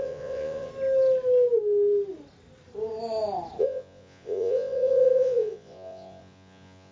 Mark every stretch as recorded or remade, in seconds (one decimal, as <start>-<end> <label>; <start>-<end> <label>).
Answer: 0.0-0.7 remade; 0.7-3.6 recorded; 3.6-6.9 remade